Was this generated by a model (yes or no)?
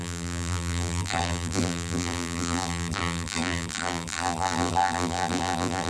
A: yes